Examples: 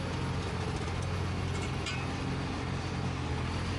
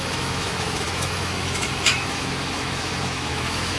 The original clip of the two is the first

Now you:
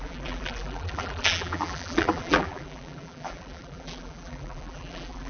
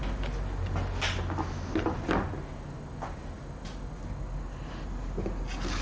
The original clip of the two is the second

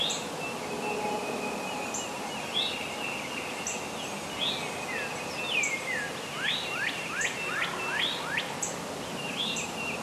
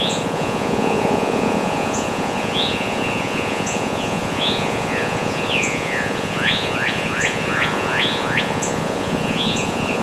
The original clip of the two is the first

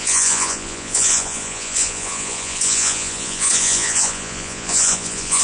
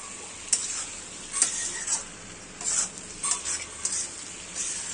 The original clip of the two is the second